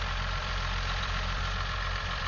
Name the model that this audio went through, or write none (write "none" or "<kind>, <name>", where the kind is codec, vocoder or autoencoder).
vocoder, BigVGAN v2